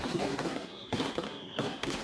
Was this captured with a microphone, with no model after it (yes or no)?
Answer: no